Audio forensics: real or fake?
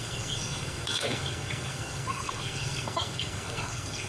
fake